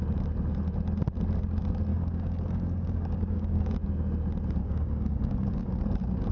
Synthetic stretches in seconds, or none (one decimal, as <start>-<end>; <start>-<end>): 1.9-3.7; 4.6-5.8